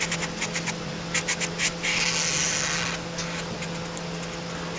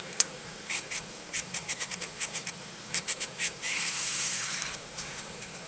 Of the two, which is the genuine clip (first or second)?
first